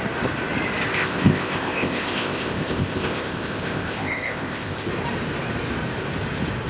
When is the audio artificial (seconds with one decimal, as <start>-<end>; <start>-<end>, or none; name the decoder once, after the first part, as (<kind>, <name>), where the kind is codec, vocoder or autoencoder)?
0.9-4.9 (codec, ZipCodec)